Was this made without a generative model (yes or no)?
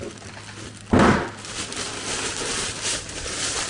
yes